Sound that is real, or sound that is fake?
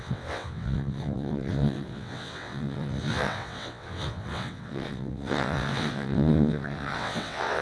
fake